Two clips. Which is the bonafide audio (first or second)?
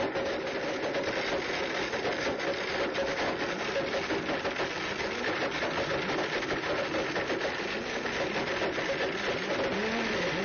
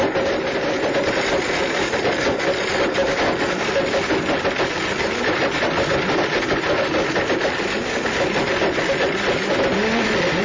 first